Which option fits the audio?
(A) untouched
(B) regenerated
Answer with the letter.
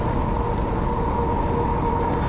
A